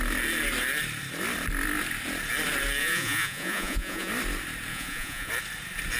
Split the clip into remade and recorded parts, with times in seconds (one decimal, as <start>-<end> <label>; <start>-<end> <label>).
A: 0.0-2.8 recorded; 2.8-4.1 remade; 4.1-4.7 recorded; 4.7-5.3 remade; 5.3-6.0 recorded